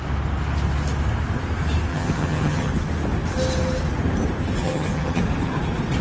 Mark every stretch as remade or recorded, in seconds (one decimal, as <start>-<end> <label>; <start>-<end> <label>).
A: 0.0-1.9 recorded; 1.9-2.7 remade; 2.7-4.6 recorded; 4.6-5.2 remade; 5.2-6.0 recorded